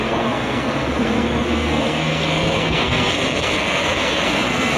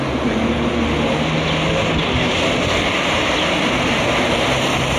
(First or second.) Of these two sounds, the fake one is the first